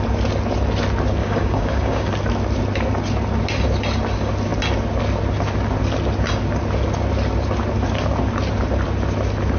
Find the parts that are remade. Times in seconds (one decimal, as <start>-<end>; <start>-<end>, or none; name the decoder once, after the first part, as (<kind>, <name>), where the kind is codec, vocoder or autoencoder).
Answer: 1.2-2.1 (codec, DAC)